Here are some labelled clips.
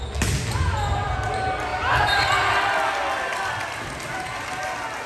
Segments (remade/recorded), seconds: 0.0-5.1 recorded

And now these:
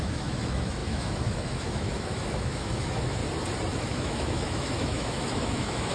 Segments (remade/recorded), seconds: 0.0-3.2 remade; 3.2-3.7 recorded; 3.7-5.9 remade

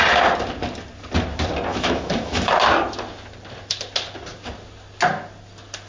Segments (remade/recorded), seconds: 0.0-1.7 recorded; 1.7-2.5 remade; 2.5-5.9 recorded